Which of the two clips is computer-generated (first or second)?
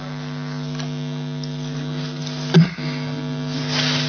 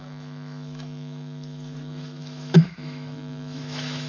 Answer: second